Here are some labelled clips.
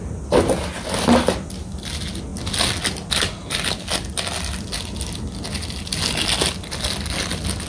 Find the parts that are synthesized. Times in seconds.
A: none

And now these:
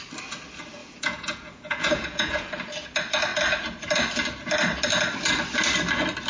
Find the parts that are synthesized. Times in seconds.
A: 0.8-2.5

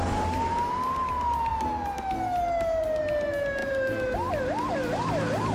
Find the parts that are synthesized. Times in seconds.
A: none

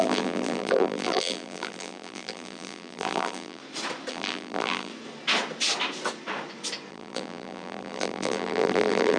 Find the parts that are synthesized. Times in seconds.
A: 0.0-3.6; 4.1-4.9; 6.9-9.2

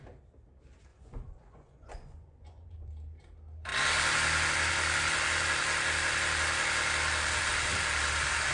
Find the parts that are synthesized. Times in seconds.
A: 0.9-2.9

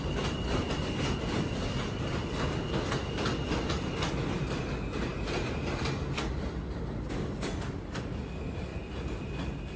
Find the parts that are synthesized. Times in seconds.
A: none